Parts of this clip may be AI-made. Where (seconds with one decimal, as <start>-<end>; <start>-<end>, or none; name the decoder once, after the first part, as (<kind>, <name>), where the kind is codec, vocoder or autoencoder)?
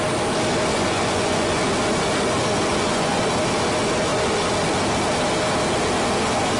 0.7-1.6 (vocoder, Vocos); 2.7-3.2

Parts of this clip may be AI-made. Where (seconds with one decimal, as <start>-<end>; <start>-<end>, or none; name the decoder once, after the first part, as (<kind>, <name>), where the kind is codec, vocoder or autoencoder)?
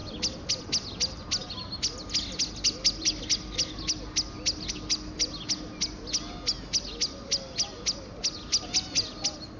none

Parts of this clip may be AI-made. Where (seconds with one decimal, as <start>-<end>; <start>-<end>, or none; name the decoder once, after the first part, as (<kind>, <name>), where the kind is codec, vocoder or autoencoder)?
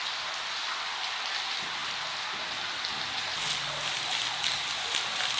none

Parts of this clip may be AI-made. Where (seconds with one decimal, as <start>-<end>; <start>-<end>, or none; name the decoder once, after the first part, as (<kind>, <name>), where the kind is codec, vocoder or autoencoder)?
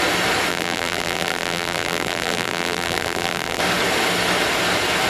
0.5-3.6 (vocoder, BigVGAN v2)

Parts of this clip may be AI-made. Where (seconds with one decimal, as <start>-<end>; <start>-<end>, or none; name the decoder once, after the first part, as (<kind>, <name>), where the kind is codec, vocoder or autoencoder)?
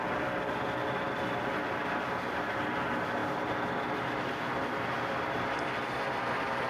none